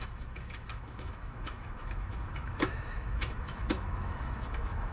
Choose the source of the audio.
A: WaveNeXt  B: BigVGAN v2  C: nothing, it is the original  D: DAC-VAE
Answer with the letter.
D